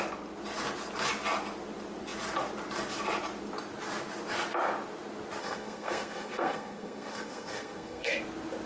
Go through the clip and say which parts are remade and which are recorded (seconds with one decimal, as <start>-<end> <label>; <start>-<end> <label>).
0.0-5.4 recorded; 5.4-8.1 remade; 8.1-8.7 recorded